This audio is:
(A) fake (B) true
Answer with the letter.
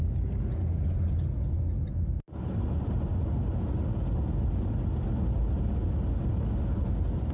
B